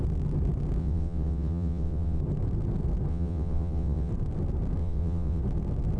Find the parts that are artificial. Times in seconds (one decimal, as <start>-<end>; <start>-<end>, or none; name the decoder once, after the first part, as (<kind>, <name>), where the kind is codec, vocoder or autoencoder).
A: 0.8-2.2 (vocoder, WaveNeXt); 3.1-4.1; 4.8-5.4